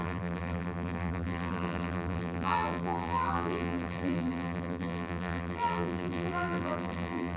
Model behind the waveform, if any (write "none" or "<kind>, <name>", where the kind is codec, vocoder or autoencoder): vocoder, BigVGAN v2